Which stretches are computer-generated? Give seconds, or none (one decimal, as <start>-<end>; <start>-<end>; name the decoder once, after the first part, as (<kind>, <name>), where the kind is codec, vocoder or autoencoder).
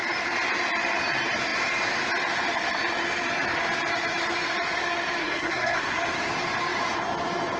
5.2-6.0 (codec, SNAC)